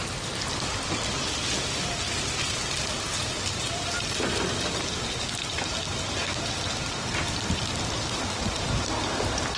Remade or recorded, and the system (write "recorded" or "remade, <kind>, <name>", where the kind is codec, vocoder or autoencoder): recorded